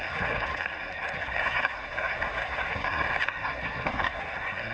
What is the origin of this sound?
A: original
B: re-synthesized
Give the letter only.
B